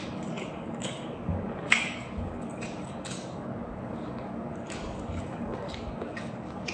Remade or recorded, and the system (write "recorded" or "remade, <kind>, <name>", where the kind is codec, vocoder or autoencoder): remade, codec, DAC